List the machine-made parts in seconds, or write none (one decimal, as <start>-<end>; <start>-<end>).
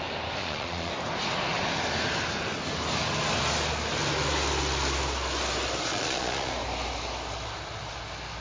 0.4-0.9; 5.9-6.5